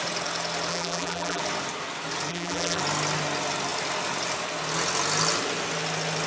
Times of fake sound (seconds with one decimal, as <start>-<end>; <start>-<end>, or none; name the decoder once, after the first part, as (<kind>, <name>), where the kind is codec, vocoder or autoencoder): 0.7-1.4 (vocoder, BigVGAN v2); 2.3-2.8

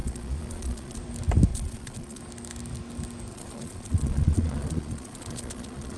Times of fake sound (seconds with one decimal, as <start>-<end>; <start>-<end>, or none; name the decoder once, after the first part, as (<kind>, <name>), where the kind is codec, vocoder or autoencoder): 0.0-1.0 (vocoder, Vocos); 1.5-2.2; 3.3-6.0

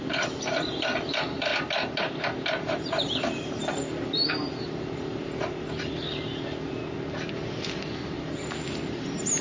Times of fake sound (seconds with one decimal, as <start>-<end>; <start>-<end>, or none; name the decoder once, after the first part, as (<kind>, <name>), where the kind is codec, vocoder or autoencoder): 0.0-1.5 (vocoder, BigVGAN v2); 2.6-3.6; 4.5-6.8; 8.2-9.4

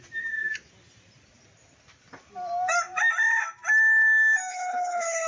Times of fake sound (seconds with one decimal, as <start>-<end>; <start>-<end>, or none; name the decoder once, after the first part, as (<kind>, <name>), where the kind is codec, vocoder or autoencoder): 4.5-5.3 (codec, HILCodec)

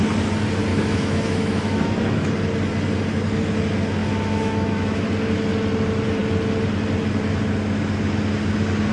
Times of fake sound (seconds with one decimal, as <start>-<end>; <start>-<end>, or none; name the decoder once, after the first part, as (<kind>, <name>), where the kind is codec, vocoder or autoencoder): 0.7-2.3 (autoencoder, DAC-VAE); 4.0-5.0

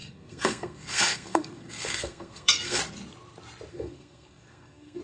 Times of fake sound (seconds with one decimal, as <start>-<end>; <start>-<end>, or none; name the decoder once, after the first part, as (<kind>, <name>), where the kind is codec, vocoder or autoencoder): 0.0-2.8 (codec, SNAC); 3.7-5.0

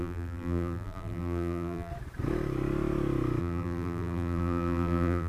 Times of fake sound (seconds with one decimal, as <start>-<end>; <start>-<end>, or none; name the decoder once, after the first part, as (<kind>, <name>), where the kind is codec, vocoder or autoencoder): 0.0-1.9 (vocoder, BigVGAN v2); 3.4-5.3